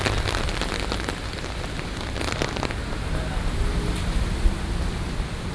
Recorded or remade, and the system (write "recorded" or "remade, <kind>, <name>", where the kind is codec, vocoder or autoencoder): recorded